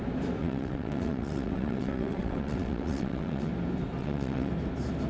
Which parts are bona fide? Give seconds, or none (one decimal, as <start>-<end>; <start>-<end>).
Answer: 0.0-0.4; 3.5-4.0; 4.5-5.1